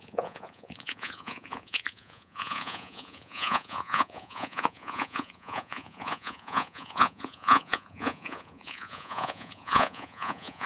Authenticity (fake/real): fake